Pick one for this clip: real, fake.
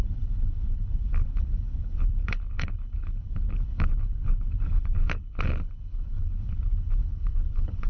fake